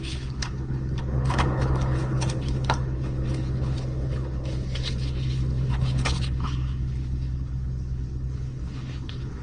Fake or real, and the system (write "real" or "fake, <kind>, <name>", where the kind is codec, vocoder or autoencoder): fake, codec, HILCodec